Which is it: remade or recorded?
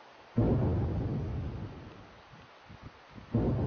recorded